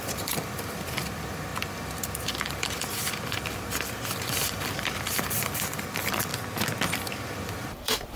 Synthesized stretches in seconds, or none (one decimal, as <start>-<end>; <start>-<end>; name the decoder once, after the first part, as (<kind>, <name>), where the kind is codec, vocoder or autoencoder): 0.0-6.3 (vocoder, BigVGAN v2); 6.9-8.2